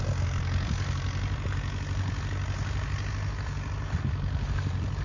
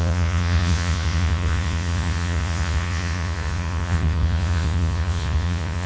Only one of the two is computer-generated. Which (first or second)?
second